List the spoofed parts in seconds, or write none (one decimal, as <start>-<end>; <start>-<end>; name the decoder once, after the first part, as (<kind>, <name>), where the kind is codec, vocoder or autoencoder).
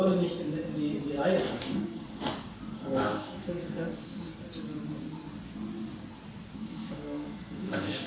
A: 1.4-2.3 (codec, SNAC); 2.7-4.4; 6.5-8.1